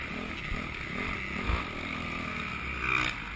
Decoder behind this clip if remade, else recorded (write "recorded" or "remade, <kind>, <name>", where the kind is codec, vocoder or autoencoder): recorded